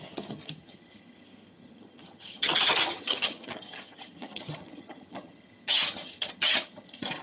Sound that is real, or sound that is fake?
fake